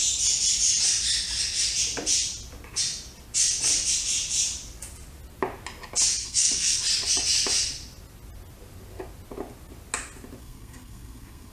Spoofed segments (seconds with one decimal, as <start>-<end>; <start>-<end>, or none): 6.2-6.8; 10.4-11.5